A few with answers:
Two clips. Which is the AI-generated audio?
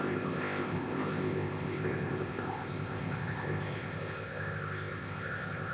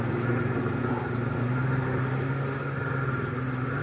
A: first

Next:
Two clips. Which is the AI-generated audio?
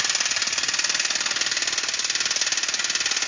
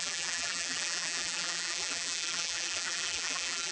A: second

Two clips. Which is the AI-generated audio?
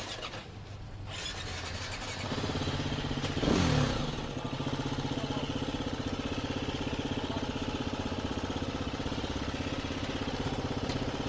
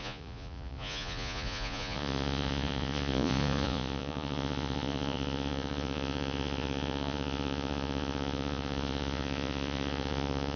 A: second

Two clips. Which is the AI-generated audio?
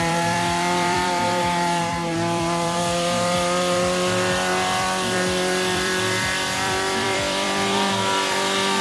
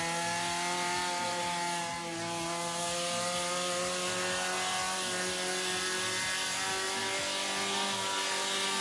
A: first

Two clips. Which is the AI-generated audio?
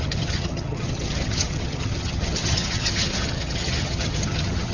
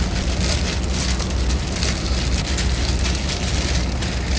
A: first